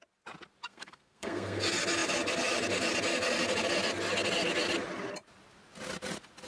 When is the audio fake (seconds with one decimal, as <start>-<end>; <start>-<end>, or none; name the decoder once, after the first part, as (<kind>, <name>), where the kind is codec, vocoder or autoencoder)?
0.7-1.6 (codec, SNAC)